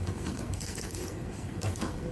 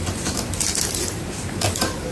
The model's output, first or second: first